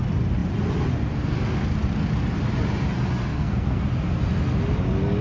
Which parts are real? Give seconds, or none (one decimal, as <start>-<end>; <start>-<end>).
0.0-3.3; 3.8-5.2